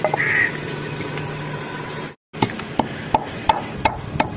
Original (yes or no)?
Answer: yes